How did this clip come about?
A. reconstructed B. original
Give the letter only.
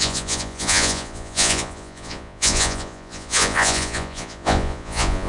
A